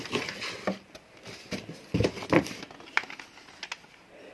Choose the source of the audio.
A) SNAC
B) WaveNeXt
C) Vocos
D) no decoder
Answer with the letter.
D